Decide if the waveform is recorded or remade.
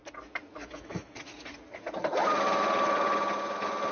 recorded